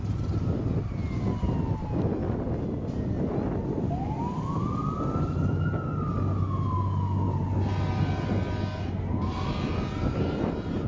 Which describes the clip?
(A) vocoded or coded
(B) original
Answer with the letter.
B